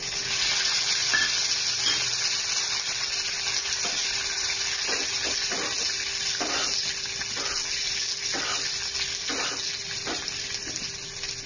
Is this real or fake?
real